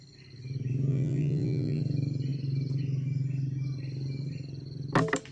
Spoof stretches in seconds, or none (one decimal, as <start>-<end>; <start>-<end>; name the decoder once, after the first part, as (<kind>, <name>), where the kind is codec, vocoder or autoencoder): 0.9-1.8 (vocoder, BigVGAN v2)